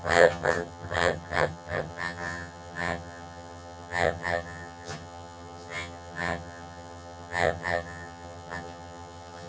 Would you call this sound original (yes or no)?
no